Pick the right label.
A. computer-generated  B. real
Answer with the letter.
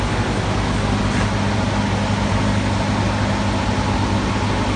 B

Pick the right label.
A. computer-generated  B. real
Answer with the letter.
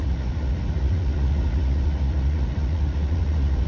A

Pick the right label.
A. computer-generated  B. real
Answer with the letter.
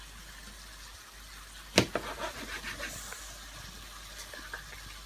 B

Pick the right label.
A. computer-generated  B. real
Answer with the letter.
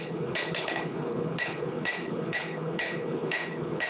A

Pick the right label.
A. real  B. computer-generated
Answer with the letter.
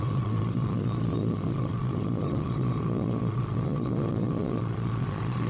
B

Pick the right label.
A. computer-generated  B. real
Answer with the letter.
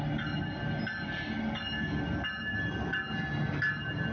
B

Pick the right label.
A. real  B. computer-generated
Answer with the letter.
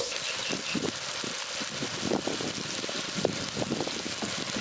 A